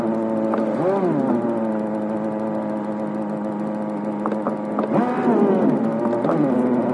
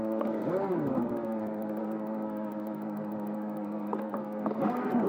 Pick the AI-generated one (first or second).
second